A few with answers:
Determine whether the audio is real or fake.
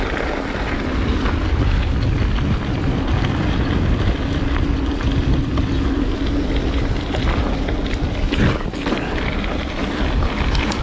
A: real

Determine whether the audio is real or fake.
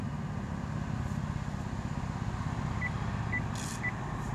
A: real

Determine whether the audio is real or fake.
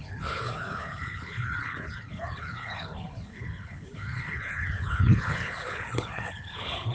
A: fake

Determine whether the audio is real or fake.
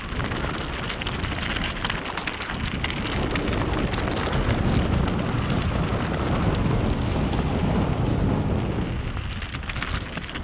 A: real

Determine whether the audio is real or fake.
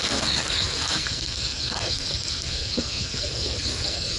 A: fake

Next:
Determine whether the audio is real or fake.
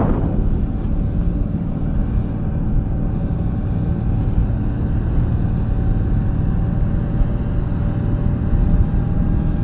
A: real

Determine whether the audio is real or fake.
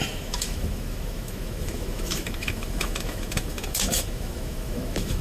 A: fake